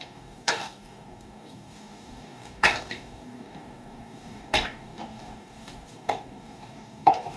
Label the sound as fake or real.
fake